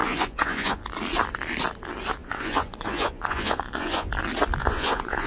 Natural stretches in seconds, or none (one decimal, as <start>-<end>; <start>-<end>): 0.8-2.2; 4.1-4.6